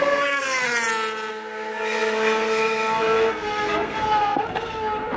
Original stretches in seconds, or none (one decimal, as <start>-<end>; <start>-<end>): 0.7-1.3